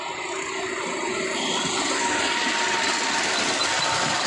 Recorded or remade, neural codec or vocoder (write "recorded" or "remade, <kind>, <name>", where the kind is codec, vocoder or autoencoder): recorded